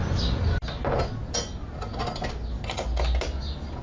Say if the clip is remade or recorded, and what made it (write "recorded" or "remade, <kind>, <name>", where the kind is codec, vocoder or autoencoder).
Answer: recorded